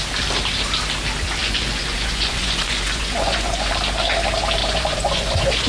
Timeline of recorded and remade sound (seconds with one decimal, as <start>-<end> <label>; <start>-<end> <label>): 0.0-1.4 recorded; 1.4-3.7 remade; 3.7-4.6 recorded; 4.6-5.7 remade